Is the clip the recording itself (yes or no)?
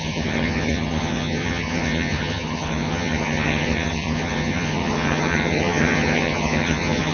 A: no